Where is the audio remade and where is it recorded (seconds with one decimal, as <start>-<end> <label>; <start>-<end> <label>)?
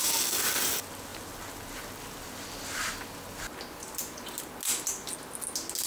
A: 0.0-5.9 recorded